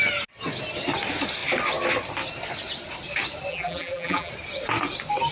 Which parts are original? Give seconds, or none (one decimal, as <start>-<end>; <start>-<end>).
0.0-3.5; 4.3-5.3